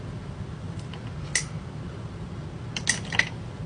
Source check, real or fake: real